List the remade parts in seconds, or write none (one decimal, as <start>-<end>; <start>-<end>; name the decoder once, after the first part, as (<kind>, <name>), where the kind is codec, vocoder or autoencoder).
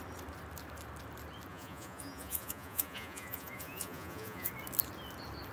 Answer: 1.5-4.5 (vocoder, Vocos)